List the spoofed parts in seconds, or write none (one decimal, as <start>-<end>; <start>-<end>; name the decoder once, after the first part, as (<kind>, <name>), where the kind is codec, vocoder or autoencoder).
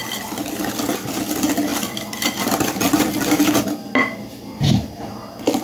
0.0-0.7 (vocoder, BigVGAN v2); 1.7-5.1